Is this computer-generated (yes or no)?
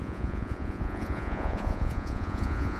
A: yes